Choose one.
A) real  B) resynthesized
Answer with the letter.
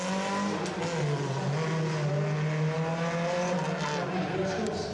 A